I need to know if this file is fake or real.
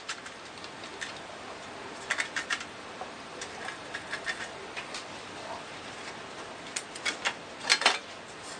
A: real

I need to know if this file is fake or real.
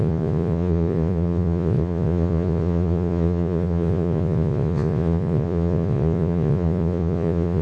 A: fake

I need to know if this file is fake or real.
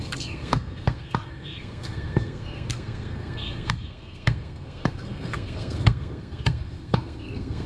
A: fake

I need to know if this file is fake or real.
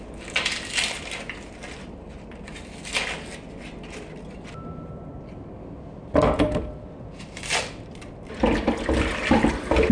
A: real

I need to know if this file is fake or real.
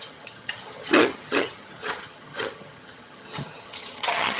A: fake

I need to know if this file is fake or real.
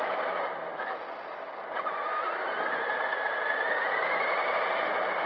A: fake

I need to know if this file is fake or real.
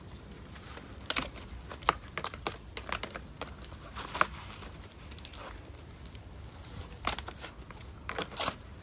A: real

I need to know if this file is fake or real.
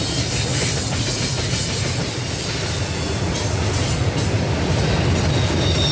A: real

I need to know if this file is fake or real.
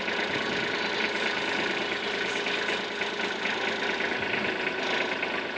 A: real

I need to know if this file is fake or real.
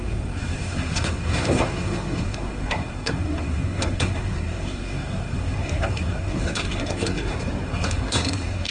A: fake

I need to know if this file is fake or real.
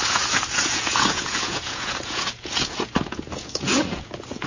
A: fake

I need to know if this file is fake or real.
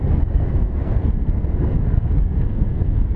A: fake